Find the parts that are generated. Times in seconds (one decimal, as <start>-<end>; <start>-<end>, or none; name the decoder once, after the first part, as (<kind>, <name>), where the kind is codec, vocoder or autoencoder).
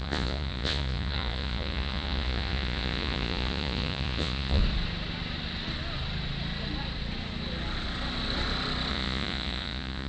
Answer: 0.0-4.6 (vocoder, Vocos); 8.9-10.1